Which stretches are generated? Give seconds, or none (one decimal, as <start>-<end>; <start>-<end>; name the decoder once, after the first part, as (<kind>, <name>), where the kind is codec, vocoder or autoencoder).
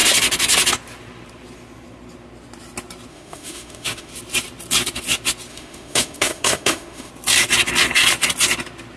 3.1-4.1 (autoencoder, DAC-VAE); 5.5-7.1